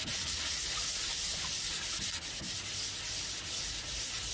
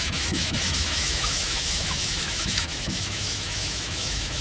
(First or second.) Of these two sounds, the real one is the first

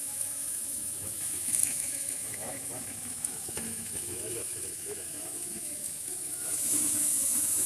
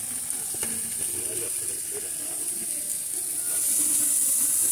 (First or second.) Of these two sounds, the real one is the second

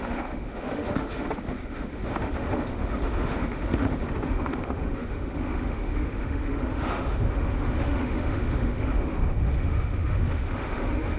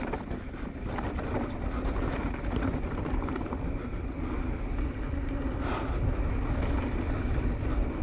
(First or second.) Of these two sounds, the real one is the second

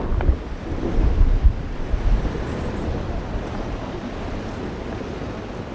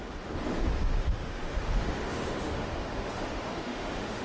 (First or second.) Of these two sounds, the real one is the first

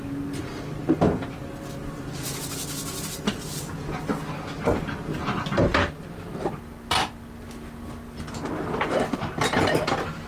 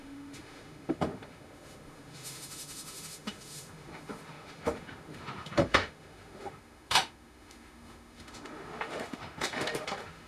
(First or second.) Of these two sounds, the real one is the first